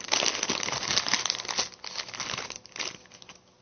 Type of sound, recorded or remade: recorded